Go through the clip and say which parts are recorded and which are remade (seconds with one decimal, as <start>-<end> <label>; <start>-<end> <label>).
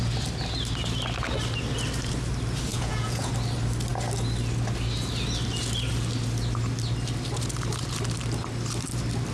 0.0-2.7 recorded; 2.7-3.3 remade; 3.3-9.3 recorded